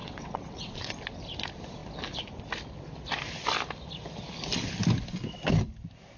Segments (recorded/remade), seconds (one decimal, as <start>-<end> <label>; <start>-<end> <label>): 0.0-1.0 remade; 1.0-6.2 recorded